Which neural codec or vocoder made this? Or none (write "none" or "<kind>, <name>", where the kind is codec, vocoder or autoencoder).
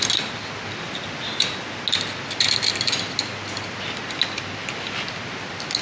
none